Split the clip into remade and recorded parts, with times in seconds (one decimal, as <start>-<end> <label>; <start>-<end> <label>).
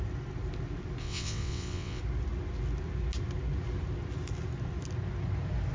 0.0-1.0 recorded; 1.0-2.0 remade; 2.0-5.7 recorded